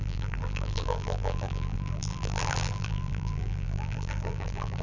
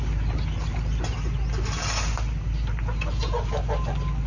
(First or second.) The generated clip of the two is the first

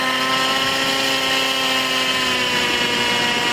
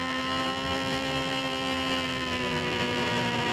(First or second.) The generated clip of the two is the second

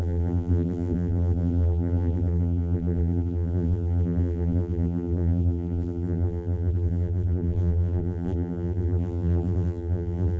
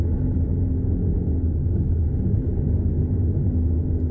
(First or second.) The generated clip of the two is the first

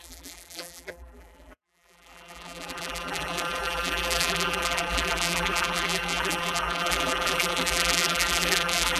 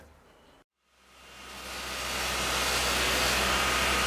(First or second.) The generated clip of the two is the first